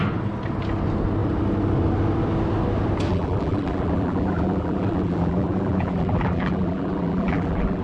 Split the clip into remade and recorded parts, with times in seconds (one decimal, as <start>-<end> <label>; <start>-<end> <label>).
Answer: 0.0-3.1 recorded; 3.1-7.8 remade